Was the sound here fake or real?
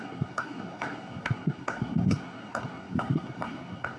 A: fake